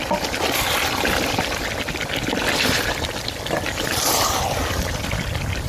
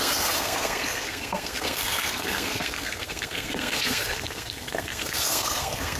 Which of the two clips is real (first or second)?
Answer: first